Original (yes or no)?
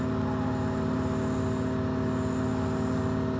yes